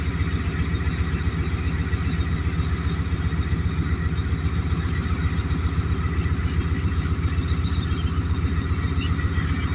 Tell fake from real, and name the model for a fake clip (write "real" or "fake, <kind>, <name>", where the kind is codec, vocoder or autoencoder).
real